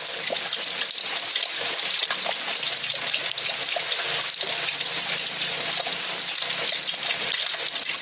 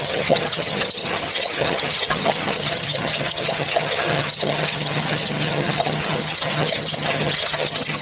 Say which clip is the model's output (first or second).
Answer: second